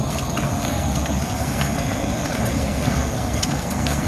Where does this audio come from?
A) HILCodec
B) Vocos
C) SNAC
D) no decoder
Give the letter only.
C